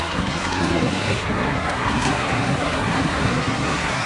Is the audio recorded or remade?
remade